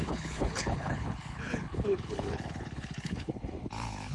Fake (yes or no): yes